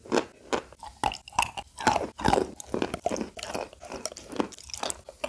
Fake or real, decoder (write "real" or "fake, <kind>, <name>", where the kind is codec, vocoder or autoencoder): real